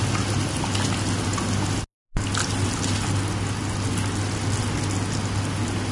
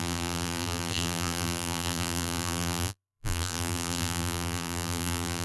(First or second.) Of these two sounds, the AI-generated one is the second